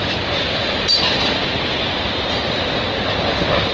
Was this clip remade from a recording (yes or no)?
no